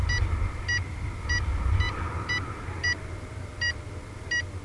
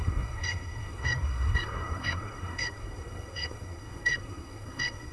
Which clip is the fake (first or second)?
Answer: second